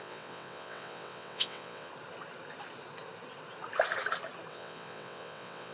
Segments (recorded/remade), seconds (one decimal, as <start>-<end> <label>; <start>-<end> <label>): 0.0-1.9 remade; 1.9-4.5 recorded; 4.5-5.7 remade